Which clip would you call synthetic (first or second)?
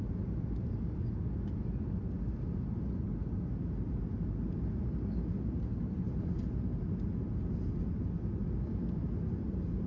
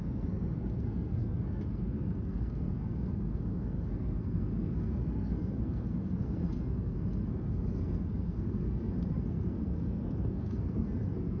second